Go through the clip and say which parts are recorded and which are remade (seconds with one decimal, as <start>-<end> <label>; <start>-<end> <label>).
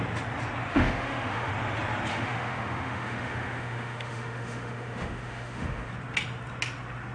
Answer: 0.0-0.7 recorded; 0.7-1.5 remade; 1.5-2.1 recorded; 2.1-5.9 remade; 5.9-7.1 recorded